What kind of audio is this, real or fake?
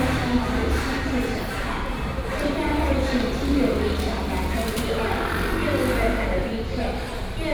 fake